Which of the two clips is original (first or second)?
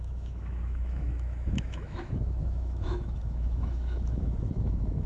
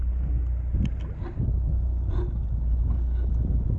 second